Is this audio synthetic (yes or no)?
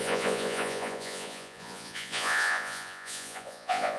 yes